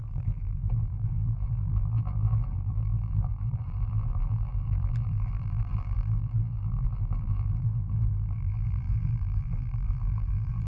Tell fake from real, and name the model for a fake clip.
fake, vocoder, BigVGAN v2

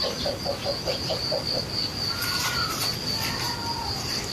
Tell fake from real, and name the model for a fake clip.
real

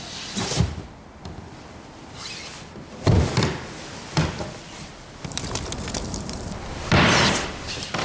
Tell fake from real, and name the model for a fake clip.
fake, vocoder, BigVGAN v2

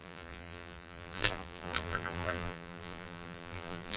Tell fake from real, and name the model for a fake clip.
fake, vocoder, BigVGAN v2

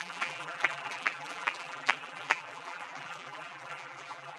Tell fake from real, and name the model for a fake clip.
fake, vocoder, BigVGAN v2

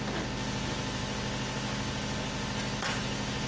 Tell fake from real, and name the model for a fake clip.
real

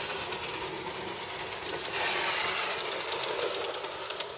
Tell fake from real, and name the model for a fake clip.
real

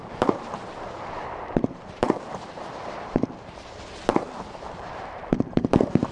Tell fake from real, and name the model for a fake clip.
fake, vocoder, BigVGAN v2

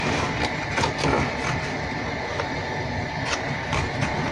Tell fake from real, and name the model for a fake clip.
real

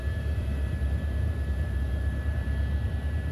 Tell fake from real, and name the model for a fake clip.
fake, vocoder, BigVGAN v2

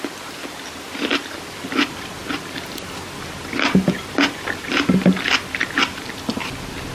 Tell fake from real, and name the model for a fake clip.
real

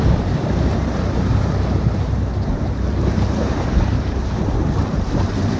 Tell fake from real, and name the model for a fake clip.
fake, vocoder, BigVGAN v2